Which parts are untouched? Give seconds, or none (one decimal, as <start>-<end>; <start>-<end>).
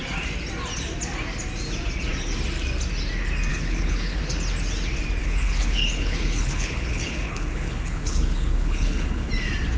0.0-3.5; 4.2-5.2; 9.3-9.8